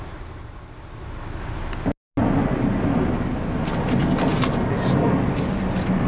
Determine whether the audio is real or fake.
real